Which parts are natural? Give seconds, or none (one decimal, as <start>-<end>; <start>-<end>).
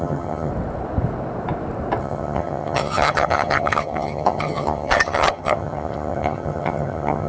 0.5-2.0